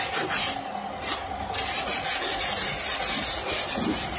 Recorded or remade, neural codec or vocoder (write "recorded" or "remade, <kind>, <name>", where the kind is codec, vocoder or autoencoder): recorded